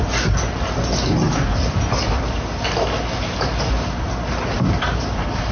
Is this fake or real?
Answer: real